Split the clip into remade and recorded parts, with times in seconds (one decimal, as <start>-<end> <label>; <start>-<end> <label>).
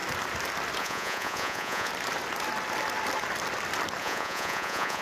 0.0-0.8 recorded; 0.8-1.9 remade; 1.9-4.0 recorded; 4.0-5.0 remade